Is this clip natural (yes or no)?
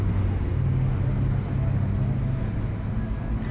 yes